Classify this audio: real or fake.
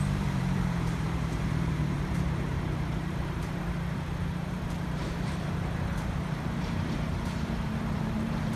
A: fake